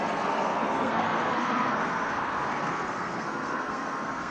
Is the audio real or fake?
fake